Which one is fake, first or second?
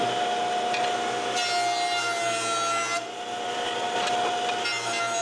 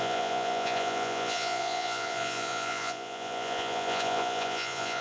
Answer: second